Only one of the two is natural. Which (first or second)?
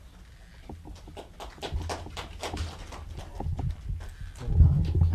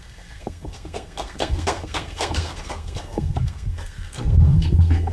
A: first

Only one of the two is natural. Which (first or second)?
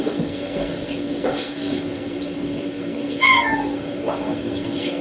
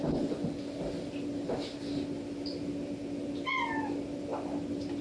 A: second